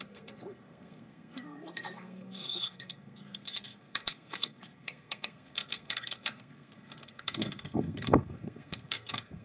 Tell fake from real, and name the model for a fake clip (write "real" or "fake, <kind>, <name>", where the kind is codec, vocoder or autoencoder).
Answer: fake, codec, SNAC